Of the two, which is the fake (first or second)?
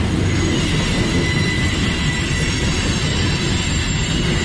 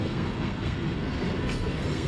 second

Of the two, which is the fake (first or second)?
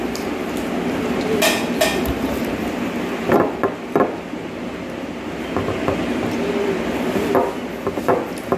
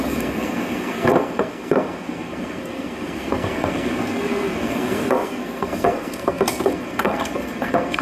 second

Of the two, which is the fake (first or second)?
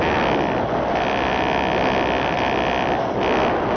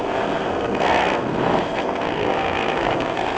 second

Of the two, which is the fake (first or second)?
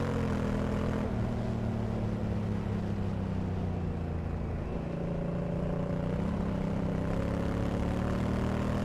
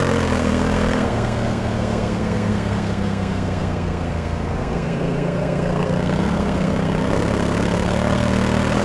second